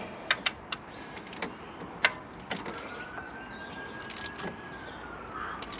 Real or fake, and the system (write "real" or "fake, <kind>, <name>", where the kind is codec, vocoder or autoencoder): real